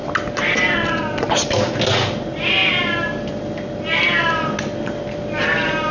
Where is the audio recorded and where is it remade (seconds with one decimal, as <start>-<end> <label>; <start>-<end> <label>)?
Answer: 0.0-5.9 recorded